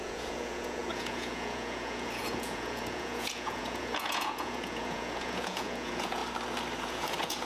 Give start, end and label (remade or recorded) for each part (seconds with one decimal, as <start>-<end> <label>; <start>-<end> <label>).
0.0-6.2 remade; 6.2-6.8 recorded; 6.8-7.5 remade